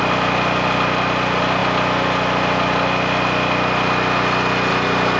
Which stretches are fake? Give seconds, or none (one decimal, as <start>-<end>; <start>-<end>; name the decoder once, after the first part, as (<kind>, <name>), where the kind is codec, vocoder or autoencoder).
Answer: none

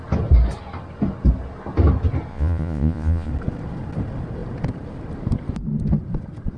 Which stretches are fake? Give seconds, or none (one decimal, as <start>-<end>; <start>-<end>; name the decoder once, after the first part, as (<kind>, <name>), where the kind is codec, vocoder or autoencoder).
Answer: 2.3-3.3 (vocoder, Vocos)

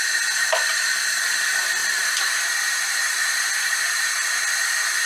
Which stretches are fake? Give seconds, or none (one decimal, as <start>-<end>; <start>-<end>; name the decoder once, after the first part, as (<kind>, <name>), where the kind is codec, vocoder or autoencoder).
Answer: 1.8-4.5 (vocoder, BigVGAN v2)